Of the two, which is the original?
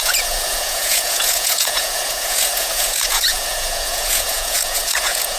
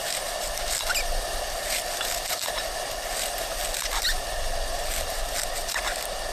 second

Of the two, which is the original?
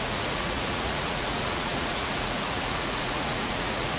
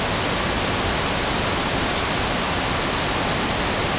second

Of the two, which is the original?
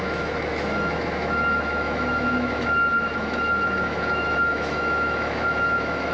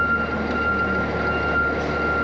second